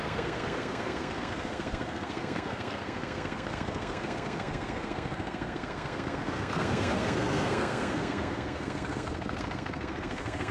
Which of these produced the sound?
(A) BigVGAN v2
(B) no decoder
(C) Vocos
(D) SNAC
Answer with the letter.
D